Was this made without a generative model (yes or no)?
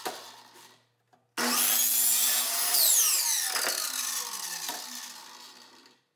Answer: yes